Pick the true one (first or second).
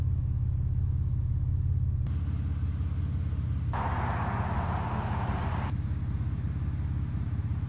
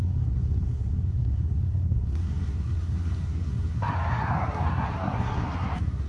first